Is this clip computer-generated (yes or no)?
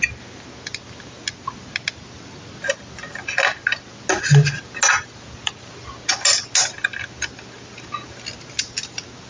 no